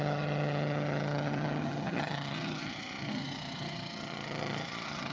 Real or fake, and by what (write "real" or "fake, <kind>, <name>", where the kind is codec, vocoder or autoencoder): fake, vocoder, HiFi-GAN